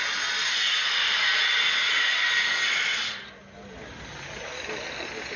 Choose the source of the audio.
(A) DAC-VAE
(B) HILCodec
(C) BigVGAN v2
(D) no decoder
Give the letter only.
D